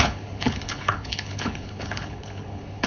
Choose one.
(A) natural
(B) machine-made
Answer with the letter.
B